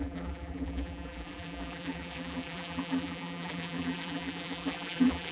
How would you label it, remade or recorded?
remade